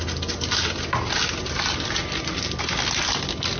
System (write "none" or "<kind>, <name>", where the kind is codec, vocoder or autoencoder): none